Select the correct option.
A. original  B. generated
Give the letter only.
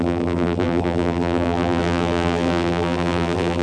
B